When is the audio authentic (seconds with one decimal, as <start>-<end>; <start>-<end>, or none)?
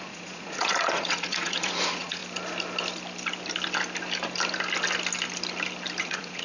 2.2-6.0